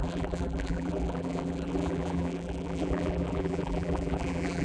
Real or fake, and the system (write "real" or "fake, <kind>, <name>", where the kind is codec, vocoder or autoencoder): fake, vocoder, BigVGAN v2